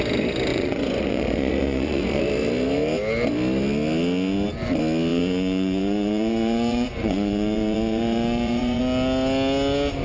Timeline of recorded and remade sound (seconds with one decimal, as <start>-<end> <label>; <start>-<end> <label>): 0.0-0.5 recorded; 0.5-2.2 remade; 2.2-5.1 recorded; 5.1-8.8 remade; 8.8-10.0 recorded